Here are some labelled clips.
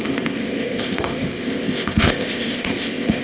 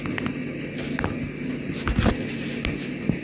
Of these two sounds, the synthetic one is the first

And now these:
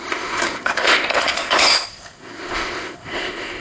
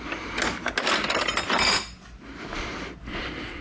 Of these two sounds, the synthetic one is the first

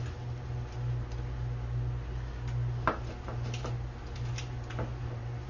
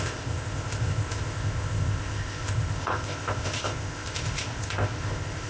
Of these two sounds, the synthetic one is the second